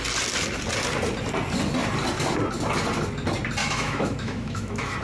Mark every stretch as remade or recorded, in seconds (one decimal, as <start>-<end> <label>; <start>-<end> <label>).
0.0-3.6 recorded; 3.6-5.0 remade